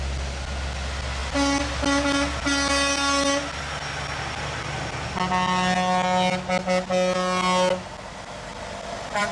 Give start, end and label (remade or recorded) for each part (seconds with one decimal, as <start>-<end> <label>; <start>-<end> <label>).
0.0-8.5 recorded; 8.5-9.3 remade